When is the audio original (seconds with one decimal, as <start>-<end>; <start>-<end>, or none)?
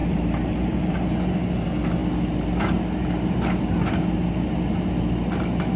1.0-5.8